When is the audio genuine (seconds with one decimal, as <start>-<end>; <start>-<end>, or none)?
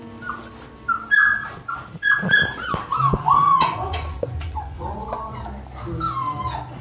0.0-3.2; 5.4-6.8